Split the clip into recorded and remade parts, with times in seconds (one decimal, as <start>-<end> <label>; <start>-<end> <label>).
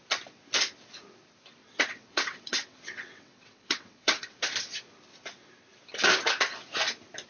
0.0-1.6 recorded; 1.6-4.4 remade; 4.4-7.3 recorded